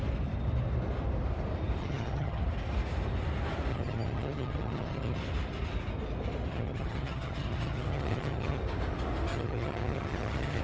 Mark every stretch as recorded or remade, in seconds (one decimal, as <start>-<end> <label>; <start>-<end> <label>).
0.0-1.8 recorded; 1.8-2.4 remade; 2.4-3.7 recorded; 3.7-5.2 remade; 5.2-6.5 recorded; 6.5-8.6 remade; 8.6-9.3 recorded; 9.3-10.6 remade